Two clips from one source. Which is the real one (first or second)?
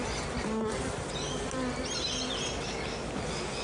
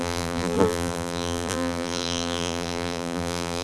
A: first